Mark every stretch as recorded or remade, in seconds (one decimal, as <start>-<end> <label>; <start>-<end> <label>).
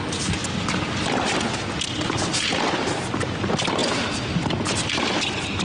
0.0-5.6 recorded